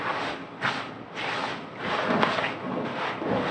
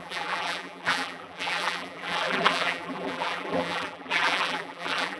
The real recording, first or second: first